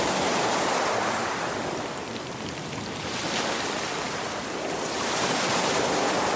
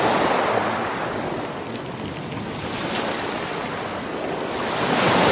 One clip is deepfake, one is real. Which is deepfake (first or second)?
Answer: first